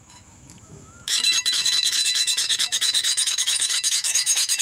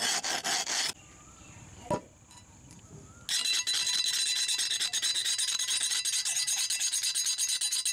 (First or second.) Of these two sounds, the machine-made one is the first